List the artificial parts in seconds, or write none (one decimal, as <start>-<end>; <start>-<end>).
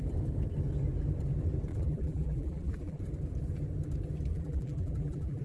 1.7-3.0; 4.3-5.4